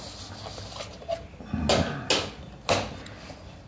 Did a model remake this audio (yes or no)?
no